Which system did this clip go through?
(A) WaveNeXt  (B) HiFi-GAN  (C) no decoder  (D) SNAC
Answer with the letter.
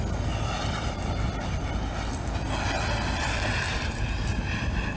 C